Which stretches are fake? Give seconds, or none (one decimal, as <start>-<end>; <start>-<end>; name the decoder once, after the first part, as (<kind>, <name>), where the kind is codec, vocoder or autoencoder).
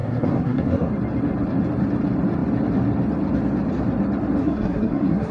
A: 0.0-0.9 (codec, SNAC); 4.4-5.3